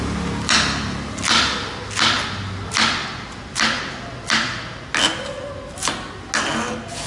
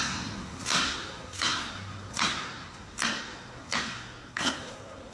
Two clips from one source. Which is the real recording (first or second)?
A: first